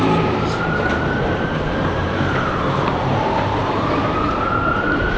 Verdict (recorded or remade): remade